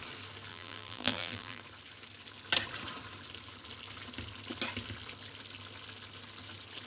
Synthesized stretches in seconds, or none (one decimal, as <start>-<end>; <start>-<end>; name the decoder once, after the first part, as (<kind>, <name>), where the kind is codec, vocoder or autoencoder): 0.5-1.6 (vocoder, BigVGAN v2)

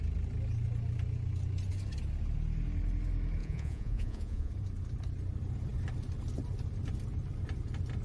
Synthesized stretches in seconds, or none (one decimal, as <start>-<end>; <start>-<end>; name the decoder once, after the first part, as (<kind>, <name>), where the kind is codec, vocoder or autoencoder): 3.4-4.5 (vocoder, Vocos)

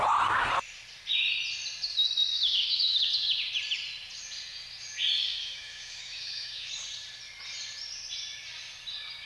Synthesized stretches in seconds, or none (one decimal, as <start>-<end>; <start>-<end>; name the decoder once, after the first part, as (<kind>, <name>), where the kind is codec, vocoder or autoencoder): 2.3-3.1 (autoencoder, DAC-VAE); 5.3-6.7

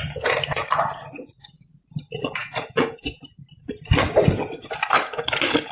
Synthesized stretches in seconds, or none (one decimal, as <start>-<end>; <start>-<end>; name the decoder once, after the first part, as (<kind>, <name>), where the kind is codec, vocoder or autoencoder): 2.4-3.2 (vocoder, Vocos)